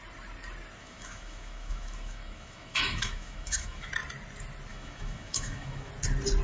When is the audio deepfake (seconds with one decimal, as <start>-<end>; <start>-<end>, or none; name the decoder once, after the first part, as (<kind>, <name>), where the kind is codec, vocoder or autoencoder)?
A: 0.8-3.9 (autoencoder, DAC-VAE); 4.7-5.9